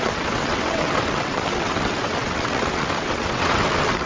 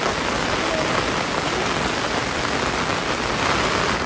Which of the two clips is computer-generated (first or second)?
first